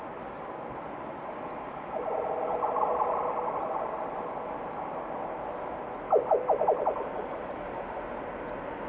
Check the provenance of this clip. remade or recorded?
recorded